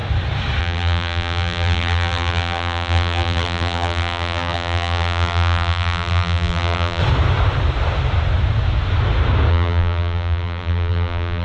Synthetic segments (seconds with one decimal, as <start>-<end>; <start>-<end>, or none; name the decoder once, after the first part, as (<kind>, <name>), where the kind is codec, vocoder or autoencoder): 0.6-7.0 (vocoder, BigVGAN v2); 9.5-11.4